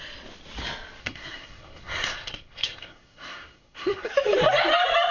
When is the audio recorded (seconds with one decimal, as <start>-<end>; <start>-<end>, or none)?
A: 0.0-1.0; 4.1-5.1